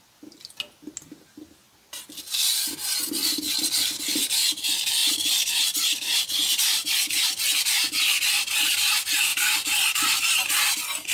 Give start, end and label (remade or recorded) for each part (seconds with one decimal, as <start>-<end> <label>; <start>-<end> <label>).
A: 0.0-5.0 recorded; 5.0-6.9 remade; 6.9-9.3 recorded; 9.3-10.2 remade; 10.2-11.1 recorded